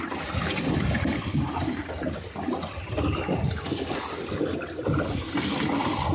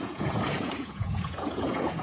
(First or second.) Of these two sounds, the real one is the first